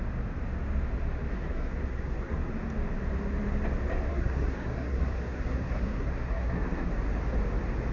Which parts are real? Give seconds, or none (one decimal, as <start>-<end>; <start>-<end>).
0.0-1.3; 2.5-4.1; 6.9-7.9